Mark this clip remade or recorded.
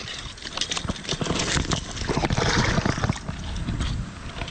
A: recorded